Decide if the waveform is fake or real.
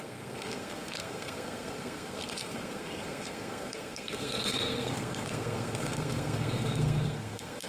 fake